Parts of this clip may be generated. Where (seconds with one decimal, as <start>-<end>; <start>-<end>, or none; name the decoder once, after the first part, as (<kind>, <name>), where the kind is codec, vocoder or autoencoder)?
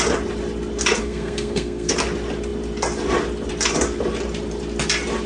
1.0-1.9 (codec, SNAC)